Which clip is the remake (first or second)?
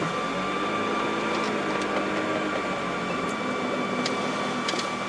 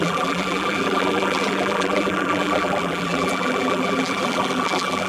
second